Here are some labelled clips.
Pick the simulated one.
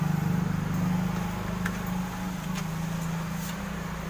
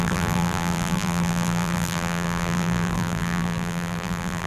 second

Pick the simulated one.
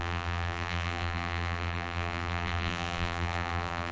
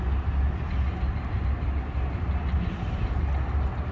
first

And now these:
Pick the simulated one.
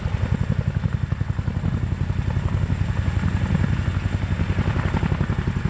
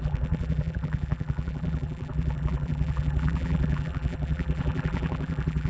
second